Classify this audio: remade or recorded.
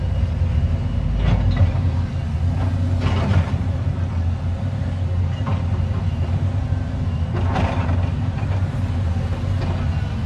recorded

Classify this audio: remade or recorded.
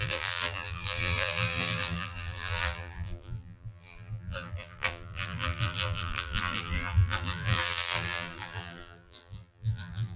remade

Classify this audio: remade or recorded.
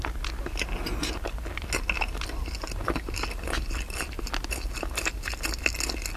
recorded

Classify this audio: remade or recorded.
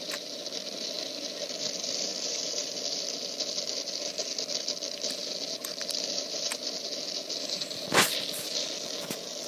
remade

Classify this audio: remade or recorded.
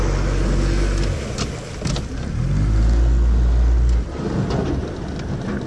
recorded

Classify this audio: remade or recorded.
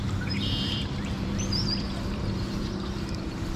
remade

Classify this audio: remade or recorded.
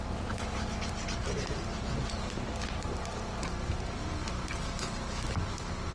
recorded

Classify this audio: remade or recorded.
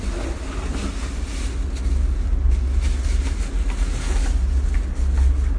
recorded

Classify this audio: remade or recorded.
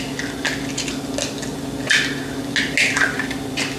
recorded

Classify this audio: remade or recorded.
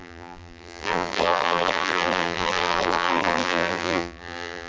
remade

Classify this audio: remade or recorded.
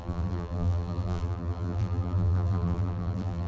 remade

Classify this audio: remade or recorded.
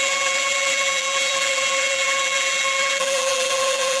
remade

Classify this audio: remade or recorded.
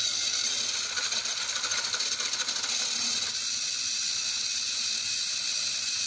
recorded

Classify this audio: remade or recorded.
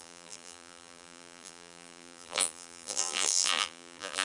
remade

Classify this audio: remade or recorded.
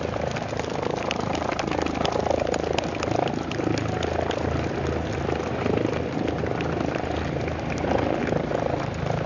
recorded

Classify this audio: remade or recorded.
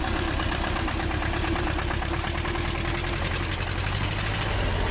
recorded